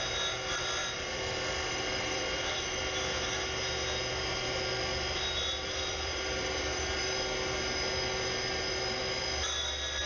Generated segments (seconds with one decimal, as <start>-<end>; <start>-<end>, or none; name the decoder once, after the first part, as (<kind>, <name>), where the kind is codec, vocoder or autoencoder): 0.8-2.8 (vocoder, BigVGAN v2); 4.9-7.0